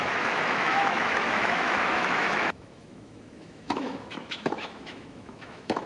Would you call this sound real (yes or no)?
no